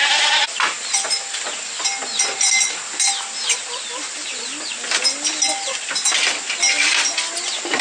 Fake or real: real